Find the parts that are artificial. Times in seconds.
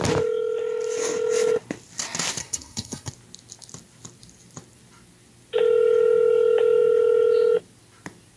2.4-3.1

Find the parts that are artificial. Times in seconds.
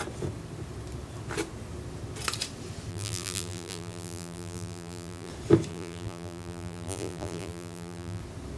2.9-5.3; 5.7-8.2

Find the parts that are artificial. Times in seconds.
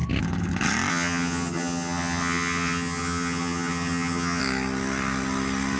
0.9-4.4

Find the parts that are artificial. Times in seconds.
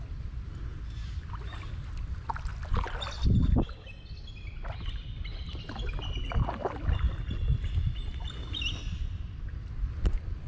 none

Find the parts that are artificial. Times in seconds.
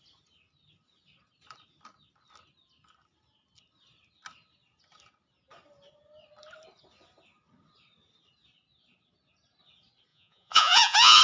10.1-11.2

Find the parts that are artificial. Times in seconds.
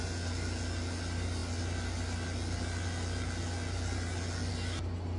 none